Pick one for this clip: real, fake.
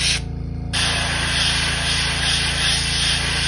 real